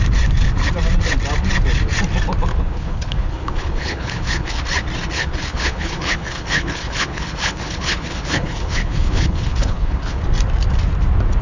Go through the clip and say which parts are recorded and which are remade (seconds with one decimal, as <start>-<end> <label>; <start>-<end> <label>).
0.0-2.5 recorded; 2.5-4.6 remade; 4.6-5.1 recorded; 5.1-10.2 remade; 10.2-11.4 recorded